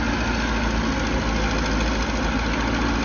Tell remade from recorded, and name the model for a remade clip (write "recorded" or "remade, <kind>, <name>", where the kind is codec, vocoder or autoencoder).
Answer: recorded